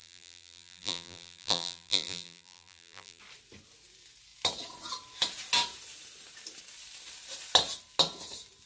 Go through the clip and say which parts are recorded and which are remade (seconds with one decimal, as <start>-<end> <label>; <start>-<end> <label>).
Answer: 0.0-3.2 remade; 3.2-8.7 recorded